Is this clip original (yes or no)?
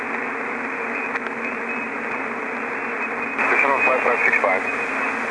yes